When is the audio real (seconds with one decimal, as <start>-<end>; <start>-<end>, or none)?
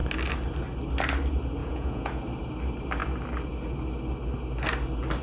0.0-1.6; 2.2-5.2